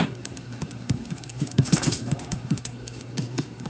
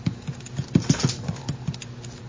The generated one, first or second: first